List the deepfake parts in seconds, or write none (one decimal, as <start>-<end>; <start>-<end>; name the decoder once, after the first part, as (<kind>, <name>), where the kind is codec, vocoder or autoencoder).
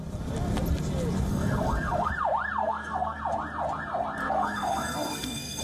1.3-2.1 (codec, SNAC); 2.6-3.2; 4.2-5.6